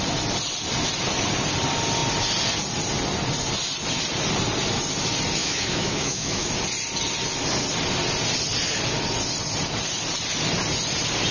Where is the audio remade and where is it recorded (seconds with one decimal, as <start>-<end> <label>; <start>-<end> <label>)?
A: 0.0-5.4 recorded; 5.4-6.5 remade; 6.5-11.3 recorded